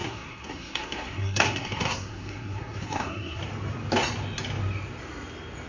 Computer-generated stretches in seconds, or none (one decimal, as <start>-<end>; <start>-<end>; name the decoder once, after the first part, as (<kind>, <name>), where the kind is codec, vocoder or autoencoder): 0.0-3.4 (codec, SNAC)